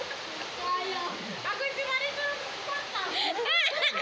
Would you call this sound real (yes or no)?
yes